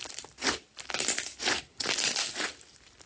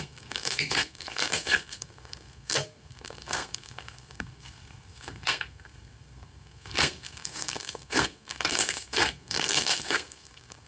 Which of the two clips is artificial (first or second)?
second